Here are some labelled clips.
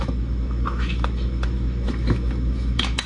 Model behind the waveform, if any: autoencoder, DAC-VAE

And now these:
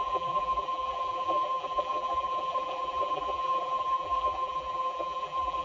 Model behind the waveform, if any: vocoder, BigVGAN v2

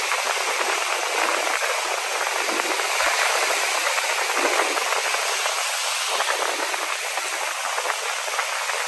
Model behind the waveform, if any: none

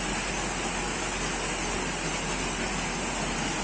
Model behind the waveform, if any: none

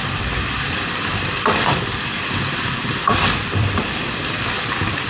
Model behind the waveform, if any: vocoder, BigVGAN v2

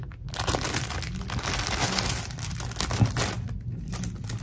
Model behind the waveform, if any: none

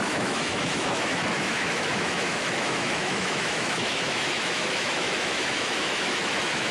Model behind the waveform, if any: autoencoder, DAC-VAE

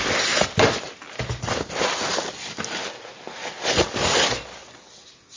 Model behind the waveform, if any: none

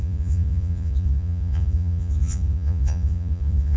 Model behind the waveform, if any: vocoder, Vocos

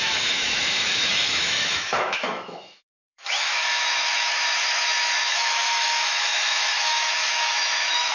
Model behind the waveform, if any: autoencoder, DAC-VAE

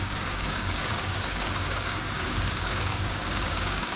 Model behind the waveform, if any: codec, DAC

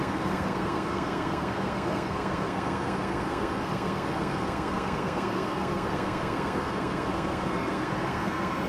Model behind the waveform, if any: codec, SNAC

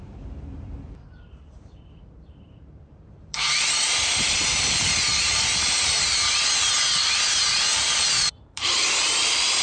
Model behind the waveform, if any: vocoder, BigVGAN v2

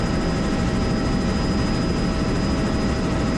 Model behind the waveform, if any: none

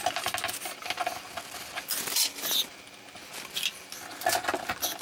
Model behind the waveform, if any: none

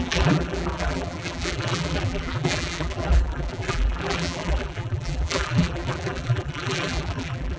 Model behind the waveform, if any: vocoder, BigVGAN v2